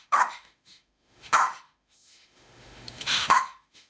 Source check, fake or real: fake